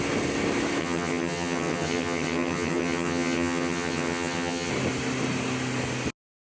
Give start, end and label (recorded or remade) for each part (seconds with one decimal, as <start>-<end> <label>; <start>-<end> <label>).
0.0-0.8 recorded; 0.8-4.7 remade; 4.7-6.5 recorded